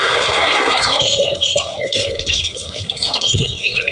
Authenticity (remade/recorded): remade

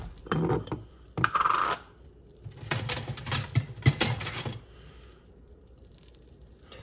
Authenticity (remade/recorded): remade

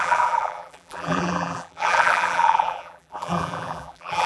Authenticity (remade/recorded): remade